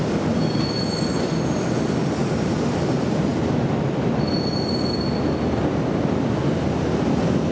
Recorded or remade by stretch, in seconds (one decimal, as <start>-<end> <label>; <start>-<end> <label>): 0.0-7.5 recorded